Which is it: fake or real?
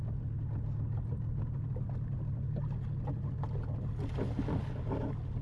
real